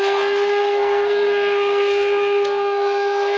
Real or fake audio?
fake